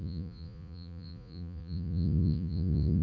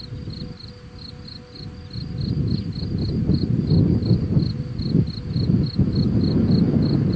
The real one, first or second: second